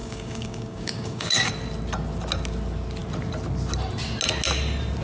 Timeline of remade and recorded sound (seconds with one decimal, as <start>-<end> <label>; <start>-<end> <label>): 0.0-1.5 remade; 1.5-5.0 recorded